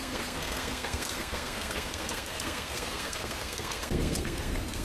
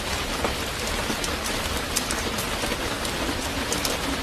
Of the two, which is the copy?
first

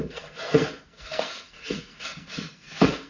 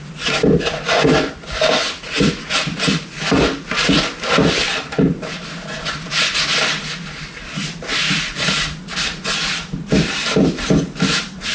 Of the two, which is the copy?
first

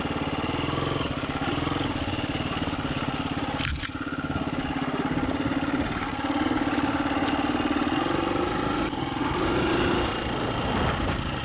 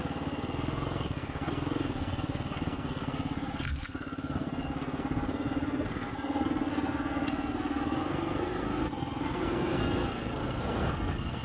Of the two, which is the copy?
second